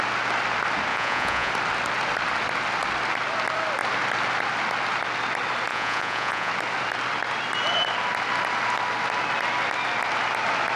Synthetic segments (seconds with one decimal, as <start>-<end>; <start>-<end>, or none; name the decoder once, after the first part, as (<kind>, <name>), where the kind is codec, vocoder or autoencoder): 0.9-1.5 (vocoder, Vocos); 5.7-6.5